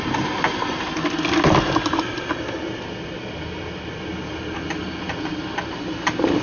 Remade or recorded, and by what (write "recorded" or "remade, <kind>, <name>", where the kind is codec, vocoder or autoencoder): recorded